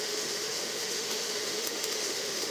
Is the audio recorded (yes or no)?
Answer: no